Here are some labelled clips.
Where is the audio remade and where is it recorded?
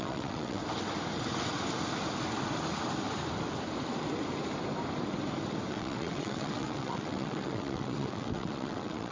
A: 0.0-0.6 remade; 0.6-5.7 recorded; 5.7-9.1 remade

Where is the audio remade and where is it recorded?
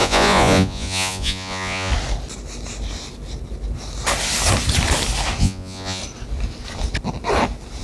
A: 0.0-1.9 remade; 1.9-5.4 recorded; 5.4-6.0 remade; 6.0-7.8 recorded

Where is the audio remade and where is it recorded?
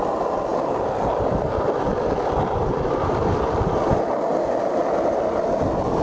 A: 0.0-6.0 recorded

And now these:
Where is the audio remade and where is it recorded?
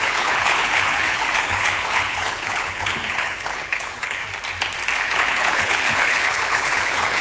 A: 0.0-4.2 remade; 4.2-5.0 recorded; 5.0-7.2 remade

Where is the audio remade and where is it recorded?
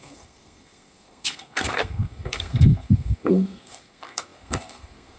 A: 0.0-5.2 remade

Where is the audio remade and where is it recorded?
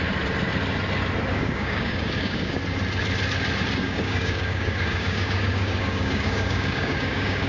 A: 0.0-1.3 recorded; 1.3-2.6 remade; 2.6-3.8 recorded; 3.8-7.5 remade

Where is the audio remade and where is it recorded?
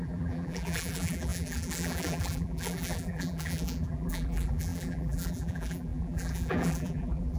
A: 0.0-7.4 remade